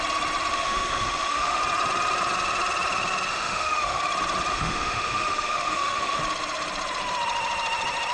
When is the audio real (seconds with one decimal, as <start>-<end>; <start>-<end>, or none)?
0.0-0.5; 1.6-3.3; 4.0-4.5; 6.2-8.1